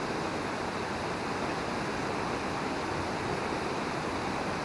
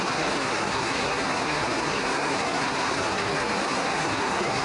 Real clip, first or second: first